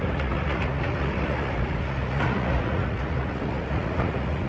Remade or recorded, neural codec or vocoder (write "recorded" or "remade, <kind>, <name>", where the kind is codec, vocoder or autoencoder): remade, vocoder, Vocos